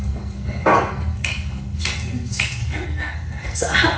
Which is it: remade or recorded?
remade